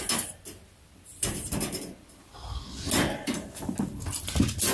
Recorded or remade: recorded